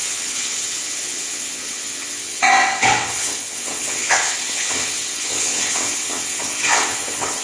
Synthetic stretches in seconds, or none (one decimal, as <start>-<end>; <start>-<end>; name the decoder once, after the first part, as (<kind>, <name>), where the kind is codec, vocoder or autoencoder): 0.0-7.4 (vocoder, WaveNeXt)